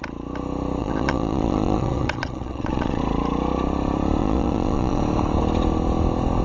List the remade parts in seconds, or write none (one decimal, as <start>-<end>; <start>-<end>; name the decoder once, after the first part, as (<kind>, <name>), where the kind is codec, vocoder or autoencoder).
0.8-3.0 (vocoder, Vocos); 4.2-5.0